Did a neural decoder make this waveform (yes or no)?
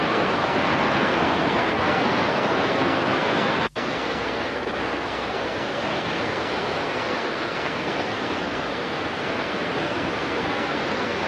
yes